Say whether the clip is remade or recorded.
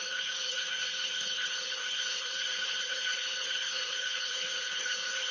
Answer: remade